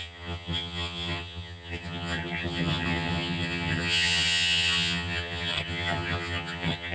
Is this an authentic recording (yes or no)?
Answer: no